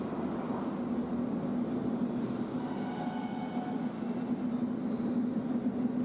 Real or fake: real